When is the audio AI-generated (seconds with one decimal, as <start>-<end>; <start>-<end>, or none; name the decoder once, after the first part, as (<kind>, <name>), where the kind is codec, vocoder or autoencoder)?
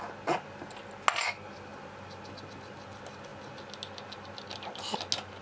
none